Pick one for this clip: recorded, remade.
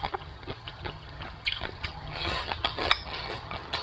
remade